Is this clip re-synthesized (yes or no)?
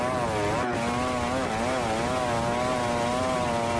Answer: no